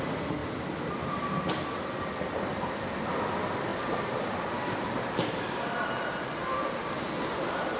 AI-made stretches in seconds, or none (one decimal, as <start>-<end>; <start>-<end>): 3.7-7.8